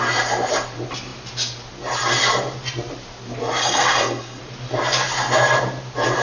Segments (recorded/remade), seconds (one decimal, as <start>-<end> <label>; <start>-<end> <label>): 0.0-3.6 recorded; 3.6-4.4 remade; 4.4-6.2 recorded